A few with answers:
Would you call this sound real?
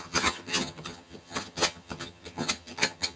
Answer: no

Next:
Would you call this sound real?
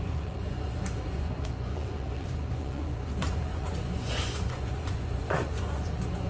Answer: no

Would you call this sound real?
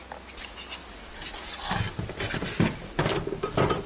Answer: yes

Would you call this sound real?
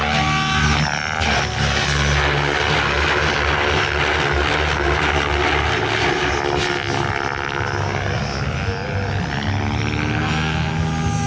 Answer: yes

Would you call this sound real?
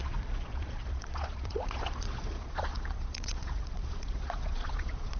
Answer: no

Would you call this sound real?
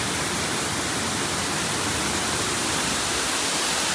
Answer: yes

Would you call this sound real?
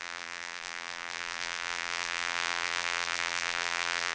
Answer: no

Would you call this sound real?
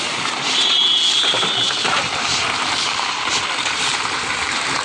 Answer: no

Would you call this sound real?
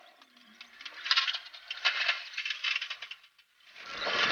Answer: yes